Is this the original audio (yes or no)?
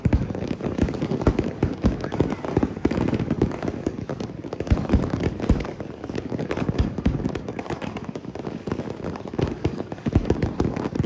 no